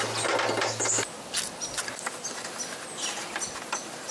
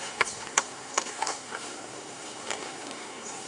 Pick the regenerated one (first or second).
second